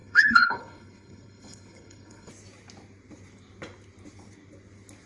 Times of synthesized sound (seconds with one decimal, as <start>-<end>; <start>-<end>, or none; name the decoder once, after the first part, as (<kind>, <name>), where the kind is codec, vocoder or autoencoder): 0.0-2.3 (codec, HILCodec)